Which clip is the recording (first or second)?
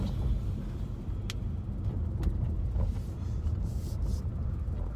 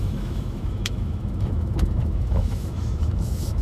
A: first